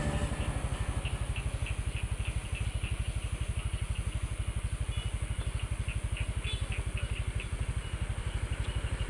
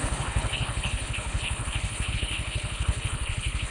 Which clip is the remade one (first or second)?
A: second